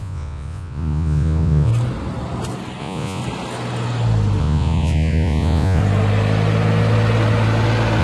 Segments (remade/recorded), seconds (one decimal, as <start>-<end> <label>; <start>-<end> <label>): 0.0-1.7 remade; 1.7-2.8 recorded; 2.8-3.2 remade; 3.2-4.4 recorded; 4.4-5.8 remade; 5.8-8.0 recorded